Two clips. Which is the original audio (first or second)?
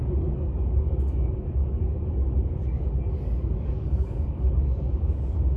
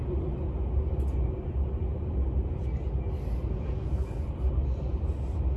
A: second